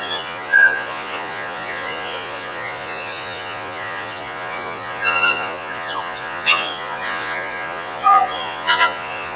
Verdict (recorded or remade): remade